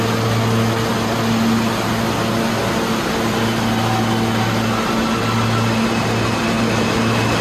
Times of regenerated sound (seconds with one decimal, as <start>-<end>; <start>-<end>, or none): none